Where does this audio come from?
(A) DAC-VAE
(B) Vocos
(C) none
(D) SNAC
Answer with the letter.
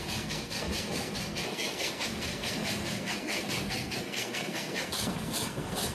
D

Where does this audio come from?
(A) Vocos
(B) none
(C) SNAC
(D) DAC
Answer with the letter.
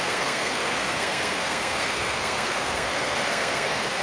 C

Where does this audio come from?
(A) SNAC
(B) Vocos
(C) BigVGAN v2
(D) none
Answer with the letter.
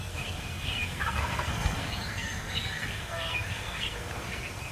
A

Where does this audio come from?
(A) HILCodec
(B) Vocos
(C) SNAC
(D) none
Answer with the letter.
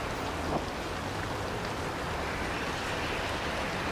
D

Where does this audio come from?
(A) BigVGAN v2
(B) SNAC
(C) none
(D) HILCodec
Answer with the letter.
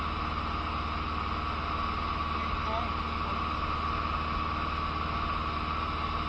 C